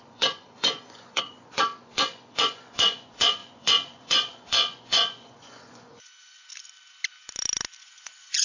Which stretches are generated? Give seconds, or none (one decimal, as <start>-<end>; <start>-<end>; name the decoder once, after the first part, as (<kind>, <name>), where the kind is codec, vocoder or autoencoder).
0.0-6.5 (vocoder, Vocos); 7.8-8.4